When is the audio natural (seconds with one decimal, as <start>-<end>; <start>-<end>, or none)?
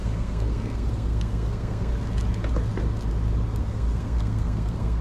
1.9-3.6